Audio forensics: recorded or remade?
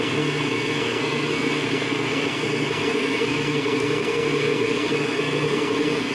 remade